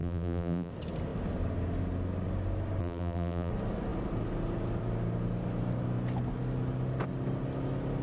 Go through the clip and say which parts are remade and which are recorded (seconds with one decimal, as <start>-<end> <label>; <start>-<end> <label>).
0.0-0.7 remade; 0.7-2.8 recorded; 2.8-3.5 remade; 3.5-8.0 recorded